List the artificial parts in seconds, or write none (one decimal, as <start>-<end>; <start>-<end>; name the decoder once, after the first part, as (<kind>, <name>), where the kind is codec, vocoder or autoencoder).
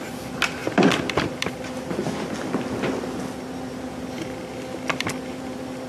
none